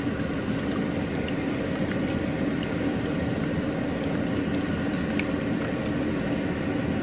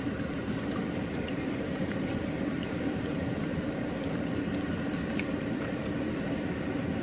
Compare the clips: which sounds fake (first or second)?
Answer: second